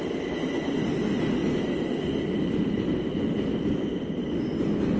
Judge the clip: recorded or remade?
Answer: recorded